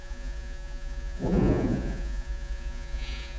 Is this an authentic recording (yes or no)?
no